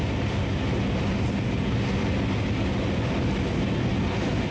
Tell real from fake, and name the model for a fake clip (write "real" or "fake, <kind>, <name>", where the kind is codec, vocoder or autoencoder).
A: real